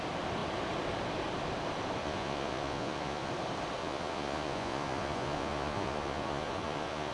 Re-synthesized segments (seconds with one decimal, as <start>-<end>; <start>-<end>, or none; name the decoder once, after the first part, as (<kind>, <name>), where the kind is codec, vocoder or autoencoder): 2.0-3.3 (vocoder, Vocos); 3.8-7.1